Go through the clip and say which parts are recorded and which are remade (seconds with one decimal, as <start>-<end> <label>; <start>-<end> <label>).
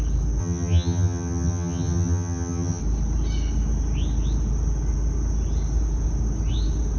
0.0-0.4 recorded; 0.4-2.8 remade; 2.8-7.0 recorded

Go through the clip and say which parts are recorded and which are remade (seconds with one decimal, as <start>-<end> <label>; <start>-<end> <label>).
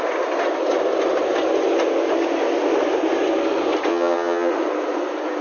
0.0-3.9 recorded; 3.9-4.5 remade; 4.5-5.4 recorded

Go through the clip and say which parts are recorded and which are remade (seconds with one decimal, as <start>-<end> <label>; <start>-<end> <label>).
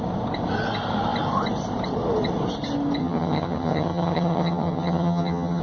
0.0-3.0 recorded; 3.0-5.6 remade